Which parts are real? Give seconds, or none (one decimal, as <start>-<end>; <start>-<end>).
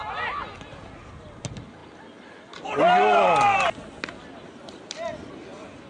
0.0-5.9